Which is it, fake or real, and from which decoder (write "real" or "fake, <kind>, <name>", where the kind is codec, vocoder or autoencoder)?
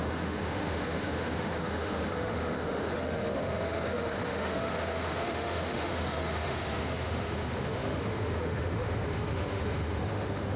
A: fake, autoencoder, DAC-VAE